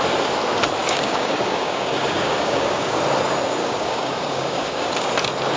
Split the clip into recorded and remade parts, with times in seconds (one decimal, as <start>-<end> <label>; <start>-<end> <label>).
0.0-0.8 recorded; 0.8-3.0 remade; 3.0-3.6 recorded; 3.6-5.1 remade; 5.1-5.6 recorded